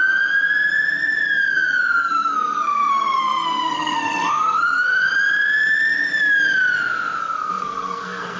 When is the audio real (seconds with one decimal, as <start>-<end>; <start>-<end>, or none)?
0.0-1.5; 5.1-7.2